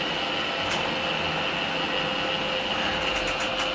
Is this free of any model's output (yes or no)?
yes